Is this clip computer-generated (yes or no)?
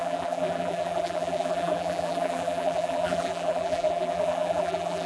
yes